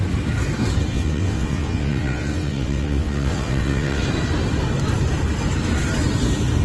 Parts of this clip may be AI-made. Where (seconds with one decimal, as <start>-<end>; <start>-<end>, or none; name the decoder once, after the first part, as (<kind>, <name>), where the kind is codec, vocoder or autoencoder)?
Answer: 0.9-4.0 (vocoder, WaveNeXt)